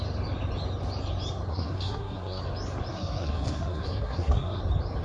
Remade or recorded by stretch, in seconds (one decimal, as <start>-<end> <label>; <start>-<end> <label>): 0.0-1.5 recorded; 1.5-2.4 remade; 2.4-2.9 recorded; 2.9-4.6 remade; 4.6-5.0 recorded